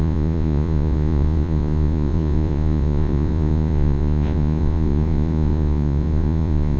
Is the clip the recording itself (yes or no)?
no